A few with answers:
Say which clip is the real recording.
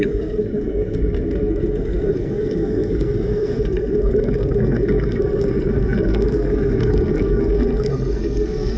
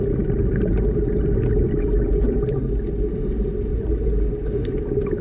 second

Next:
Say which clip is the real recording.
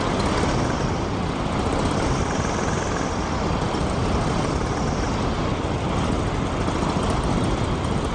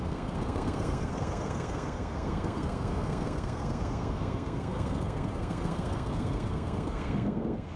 first